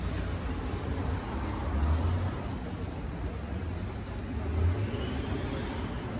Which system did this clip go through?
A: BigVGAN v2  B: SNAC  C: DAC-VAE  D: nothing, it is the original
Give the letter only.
D